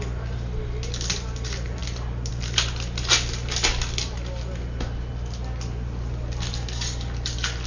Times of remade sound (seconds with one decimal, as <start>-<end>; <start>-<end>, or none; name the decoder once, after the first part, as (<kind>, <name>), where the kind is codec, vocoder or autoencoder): none